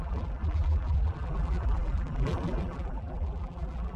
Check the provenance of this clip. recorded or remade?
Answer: remade